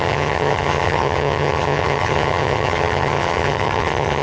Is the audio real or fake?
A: fake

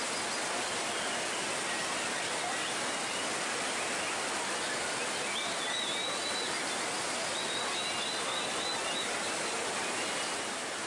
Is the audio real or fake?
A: real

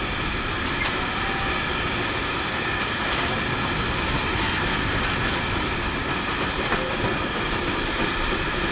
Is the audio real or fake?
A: real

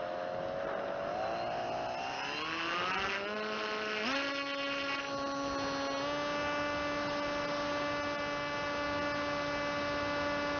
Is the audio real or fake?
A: real